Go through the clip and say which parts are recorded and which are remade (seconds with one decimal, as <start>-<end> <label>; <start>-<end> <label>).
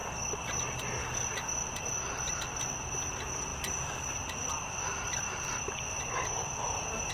0.0-7.1 recorded